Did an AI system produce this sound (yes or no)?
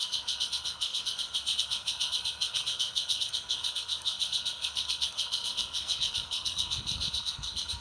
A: yes